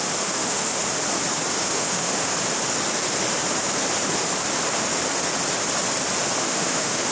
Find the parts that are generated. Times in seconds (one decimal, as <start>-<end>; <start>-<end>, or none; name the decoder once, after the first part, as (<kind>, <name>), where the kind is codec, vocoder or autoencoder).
0.0-0.8 (autoencoder, DAC-VAE); 1.6-2.3; 6.4-7.1